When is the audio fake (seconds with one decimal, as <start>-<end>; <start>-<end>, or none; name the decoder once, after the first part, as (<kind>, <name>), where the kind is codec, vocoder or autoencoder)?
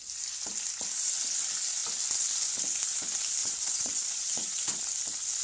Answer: 3.4-4.8 (vocoder, WaveNeXt)